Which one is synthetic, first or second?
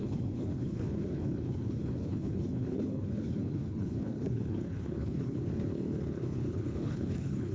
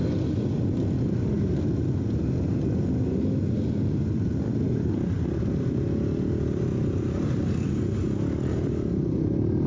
first